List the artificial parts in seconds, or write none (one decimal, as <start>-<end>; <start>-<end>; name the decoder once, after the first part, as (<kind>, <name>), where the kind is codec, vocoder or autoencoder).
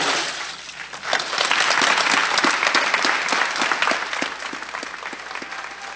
none